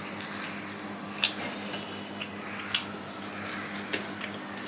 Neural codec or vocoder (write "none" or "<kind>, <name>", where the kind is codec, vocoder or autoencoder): none